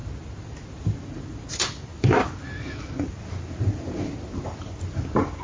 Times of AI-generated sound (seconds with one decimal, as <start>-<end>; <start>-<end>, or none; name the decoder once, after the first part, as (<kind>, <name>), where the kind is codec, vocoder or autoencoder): none